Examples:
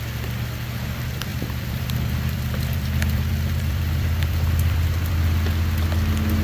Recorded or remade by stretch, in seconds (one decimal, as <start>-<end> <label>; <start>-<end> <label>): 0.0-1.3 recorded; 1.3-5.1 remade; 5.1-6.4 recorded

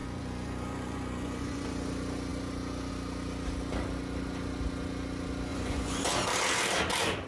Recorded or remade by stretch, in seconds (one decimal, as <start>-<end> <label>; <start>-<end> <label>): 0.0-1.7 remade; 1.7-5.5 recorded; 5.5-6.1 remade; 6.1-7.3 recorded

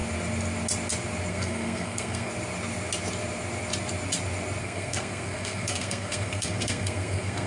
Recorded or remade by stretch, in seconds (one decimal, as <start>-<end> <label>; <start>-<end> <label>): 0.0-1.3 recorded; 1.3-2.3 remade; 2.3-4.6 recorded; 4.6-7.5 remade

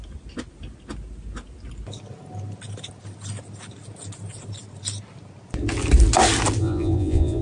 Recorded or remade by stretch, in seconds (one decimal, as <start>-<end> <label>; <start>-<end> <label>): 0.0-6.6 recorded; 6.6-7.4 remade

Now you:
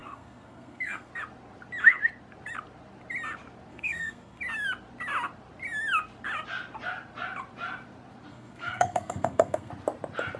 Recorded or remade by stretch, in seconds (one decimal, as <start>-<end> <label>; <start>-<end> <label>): 0.0-1.1 remade; 1.1-3.7 recorded; 3.7-4.4 remade; 4.4-8.3 recorded; 8.3-9.7 remade; 9.7-10.4 recorded

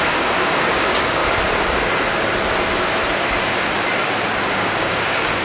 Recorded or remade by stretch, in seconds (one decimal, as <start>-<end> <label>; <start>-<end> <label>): 0.0-1.2 remade; 1.2-4.4 recorded; 4.4-5.4 remade

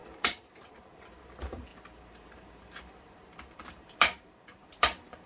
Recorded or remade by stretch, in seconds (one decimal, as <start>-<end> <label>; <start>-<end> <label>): 0.0-5.3 remade

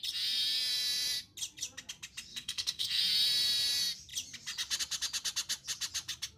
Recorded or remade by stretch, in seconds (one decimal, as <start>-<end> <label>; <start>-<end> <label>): 0.0-2.3 recorded; 2.3-3.0 remade; 3.0-6.4 recorded